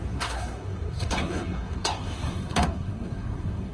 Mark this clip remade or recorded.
remade